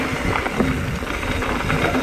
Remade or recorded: recorded